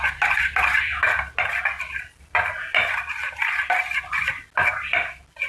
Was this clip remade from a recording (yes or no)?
no